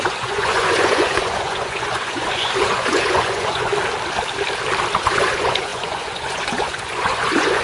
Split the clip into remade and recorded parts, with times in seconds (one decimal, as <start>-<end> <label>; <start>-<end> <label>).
0.0-3.7 remade; 3.7-5.0 recorded; 5.0-7.6 remade